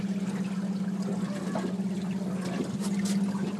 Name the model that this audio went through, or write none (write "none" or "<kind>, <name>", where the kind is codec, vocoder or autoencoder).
none